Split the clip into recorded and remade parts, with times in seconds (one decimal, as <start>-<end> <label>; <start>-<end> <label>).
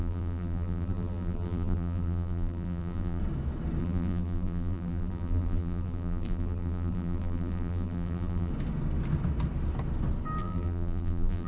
0.0-3.2 remade; 3.2-3.8 recorded; 3.8-8.5 remade; 8.5-10.4 recorded; 10.4-11.5 remade